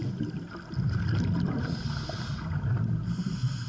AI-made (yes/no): no